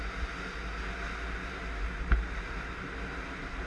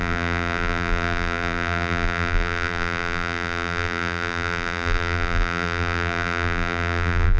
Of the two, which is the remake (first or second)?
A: second